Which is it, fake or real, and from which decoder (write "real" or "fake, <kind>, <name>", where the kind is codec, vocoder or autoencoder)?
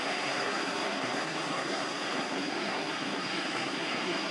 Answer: fake, codec, SNAC